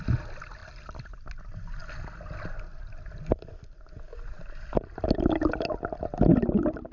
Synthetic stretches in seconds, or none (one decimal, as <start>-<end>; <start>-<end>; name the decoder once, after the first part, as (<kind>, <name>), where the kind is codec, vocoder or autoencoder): 0.6-1.4 (vocoder, BigVGAN v2); 4.1-4.8